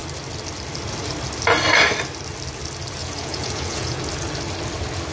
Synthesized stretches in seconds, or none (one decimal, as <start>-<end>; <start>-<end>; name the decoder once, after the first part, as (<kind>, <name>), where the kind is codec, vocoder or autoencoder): 3.0-4.0 (vocoder, Vocos)